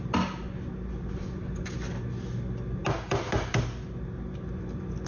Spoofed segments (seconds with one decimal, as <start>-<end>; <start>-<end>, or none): none